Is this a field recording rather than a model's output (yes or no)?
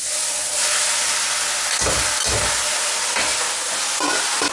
yes